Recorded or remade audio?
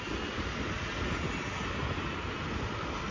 recorded